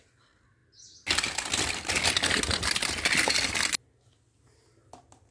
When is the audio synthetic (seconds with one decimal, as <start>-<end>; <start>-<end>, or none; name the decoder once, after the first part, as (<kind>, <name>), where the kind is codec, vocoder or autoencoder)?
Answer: none